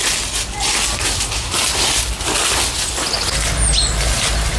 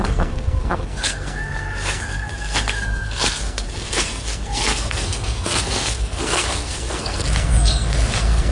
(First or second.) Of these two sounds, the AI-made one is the second